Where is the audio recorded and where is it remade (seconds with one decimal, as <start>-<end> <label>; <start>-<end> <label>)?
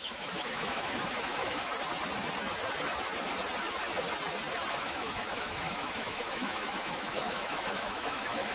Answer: 0.0-1.7 remade; 1.7-4.7 recorded; 4.7-8.5 remade